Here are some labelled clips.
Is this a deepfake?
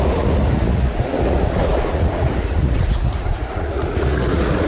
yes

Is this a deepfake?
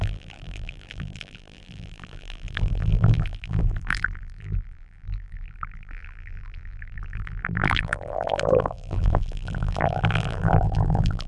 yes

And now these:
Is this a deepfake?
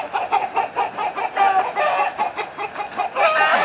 no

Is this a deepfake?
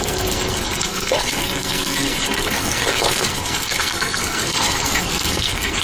yes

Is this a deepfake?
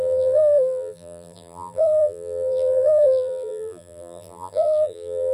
yes